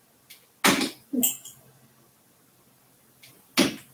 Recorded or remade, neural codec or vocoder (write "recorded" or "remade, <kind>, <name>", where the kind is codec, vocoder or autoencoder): recorded